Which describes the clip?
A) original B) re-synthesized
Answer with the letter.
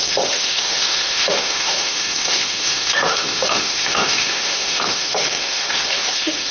B